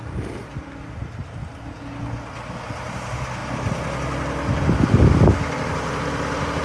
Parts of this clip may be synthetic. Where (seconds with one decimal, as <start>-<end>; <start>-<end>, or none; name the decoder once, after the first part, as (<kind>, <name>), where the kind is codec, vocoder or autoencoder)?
none